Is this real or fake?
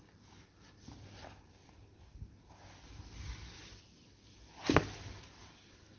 real